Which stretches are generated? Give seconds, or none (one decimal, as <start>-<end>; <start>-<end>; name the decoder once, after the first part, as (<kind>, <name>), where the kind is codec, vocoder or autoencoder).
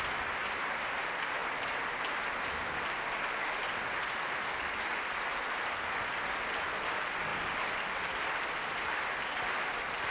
none